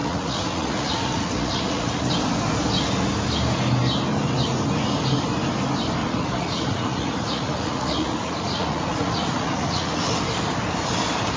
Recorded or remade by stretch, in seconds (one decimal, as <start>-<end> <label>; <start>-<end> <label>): 0.0-2.1 remade; 2.1-6.0 recorded; 6.0-10.0 remade; 10.0-11.4 recorded